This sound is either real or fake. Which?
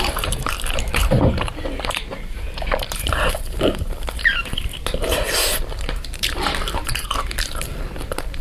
fake